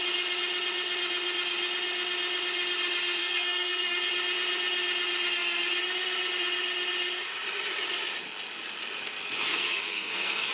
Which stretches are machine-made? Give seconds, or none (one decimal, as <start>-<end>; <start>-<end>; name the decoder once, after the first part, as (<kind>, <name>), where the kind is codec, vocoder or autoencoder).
3.2-4.1 (codec, SNAC); 9.5-10.5